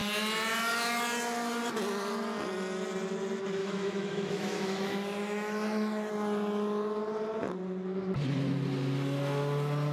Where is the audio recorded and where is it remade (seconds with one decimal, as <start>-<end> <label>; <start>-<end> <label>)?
0.0-3.6 recorded; 3.6-6.1 remade; 6.1-9.9 recorded